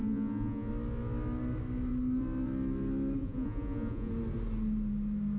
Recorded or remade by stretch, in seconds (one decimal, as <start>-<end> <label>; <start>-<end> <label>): 0.0-0.7 remade; 0.7-3.2 recorded; 3.2-4.1 remade; 4.1-5.4 recorded